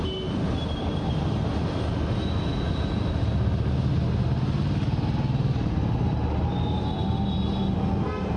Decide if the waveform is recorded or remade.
recorded